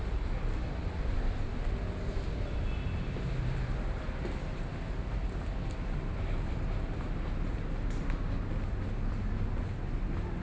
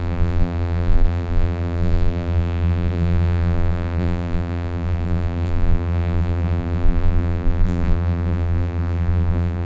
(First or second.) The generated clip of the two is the second